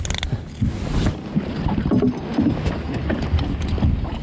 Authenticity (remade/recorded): recorded